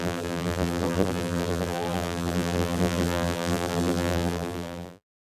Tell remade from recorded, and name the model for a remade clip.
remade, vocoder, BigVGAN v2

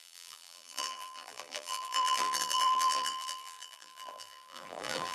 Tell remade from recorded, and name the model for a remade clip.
remade, vocoder, BigVGAN v2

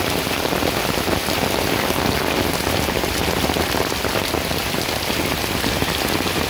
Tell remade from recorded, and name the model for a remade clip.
recorded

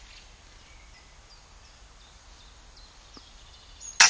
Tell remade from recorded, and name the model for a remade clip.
recorded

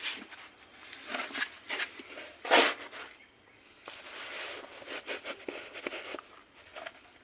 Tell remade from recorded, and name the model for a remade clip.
recorded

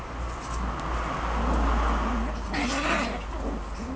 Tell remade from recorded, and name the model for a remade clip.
recorded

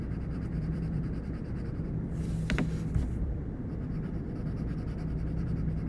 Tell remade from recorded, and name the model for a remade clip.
remade, vocoder, BigVGAN v2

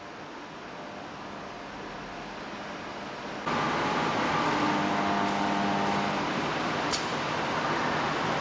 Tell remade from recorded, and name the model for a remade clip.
recorded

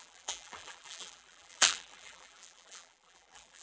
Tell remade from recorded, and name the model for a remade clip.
remade, vocoder, BigVGAN v2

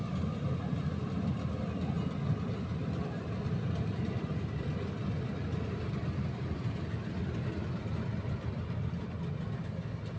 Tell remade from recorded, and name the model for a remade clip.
recorded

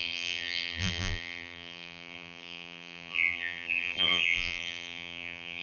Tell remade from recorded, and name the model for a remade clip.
remade, vocoder, BigVGAN v2